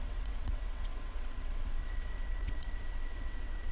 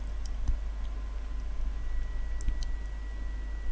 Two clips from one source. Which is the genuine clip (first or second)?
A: second